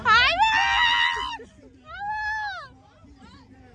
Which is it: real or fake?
real